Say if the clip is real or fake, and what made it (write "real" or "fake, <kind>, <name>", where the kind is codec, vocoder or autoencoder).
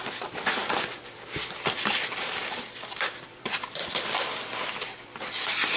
fake, vocoder, BigVGAN v2